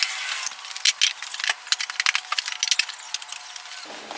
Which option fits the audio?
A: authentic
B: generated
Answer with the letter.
A